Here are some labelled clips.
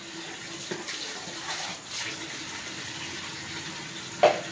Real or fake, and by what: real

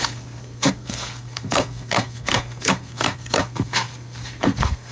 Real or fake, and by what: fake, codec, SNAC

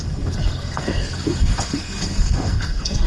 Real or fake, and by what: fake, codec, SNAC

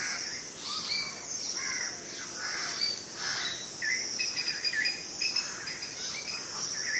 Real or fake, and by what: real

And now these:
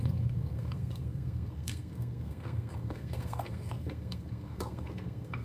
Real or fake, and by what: fake, codec, SNAC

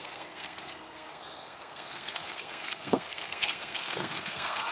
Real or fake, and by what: fake, codec, SNAC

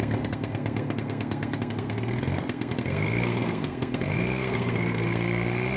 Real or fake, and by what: fake, codec, SNAC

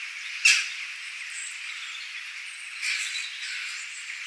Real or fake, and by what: real